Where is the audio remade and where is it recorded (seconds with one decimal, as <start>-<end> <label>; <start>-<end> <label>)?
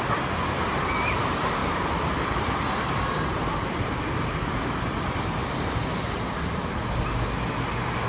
0.0-1.6 recorded; 1.6-5.6 remade; 5.6-8.1 recorded